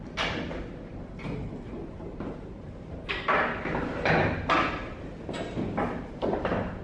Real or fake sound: real